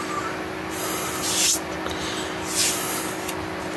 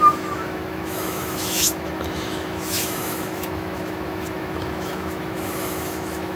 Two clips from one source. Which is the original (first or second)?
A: first